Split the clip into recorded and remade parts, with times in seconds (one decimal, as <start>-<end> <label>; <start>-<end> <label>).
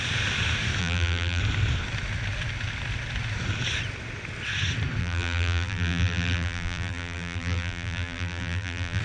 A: 0.0-0.8 recorded; 0.8-1.4 remade; 1.4-5.0 recorded; 5.0-9.0 remade